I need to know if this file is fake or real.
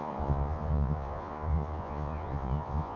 fake